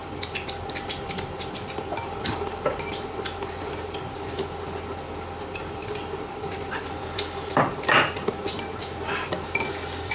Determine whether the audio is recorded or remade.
recorded